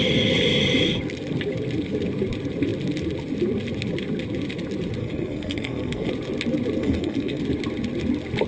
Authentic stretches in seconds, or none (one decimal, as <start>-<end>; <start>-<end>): 0.0-5.0; 6.1-6.8; 7.4-8.5